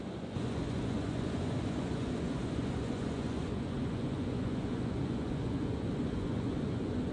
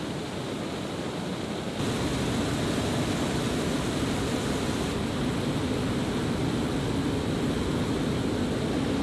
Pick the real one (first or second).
second